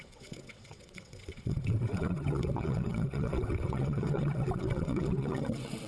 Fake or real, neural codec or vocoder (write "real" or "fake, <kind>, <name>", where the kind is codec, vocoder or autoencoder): fake, vocoder, WaveNeXt